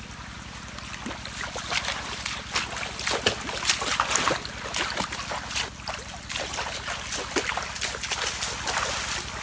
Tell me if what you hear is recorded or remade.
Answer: recorded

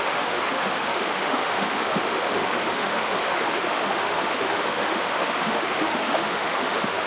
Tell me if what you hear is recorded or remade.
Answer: remade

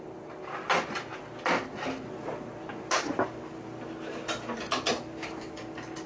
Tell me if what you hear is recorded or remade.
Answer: recorded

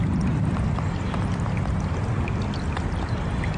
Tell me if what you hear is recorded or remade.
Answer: recorded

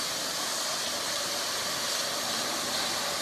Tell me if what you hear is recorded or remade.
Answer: recorded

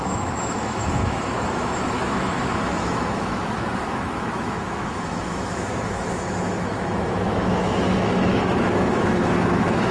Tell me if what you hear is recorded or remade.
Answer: remade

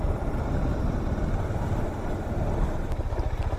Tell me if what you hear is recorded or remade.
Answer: recorded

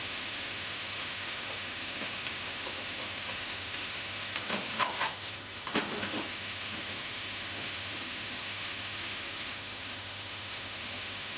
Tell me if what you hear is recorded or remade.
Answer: remade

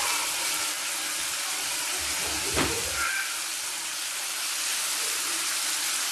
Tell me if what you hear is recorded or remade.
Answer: recorded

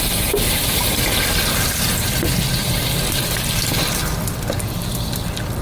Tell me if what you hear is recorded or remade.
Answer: recorded